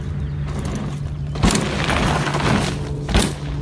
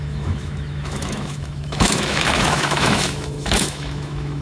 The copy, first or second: second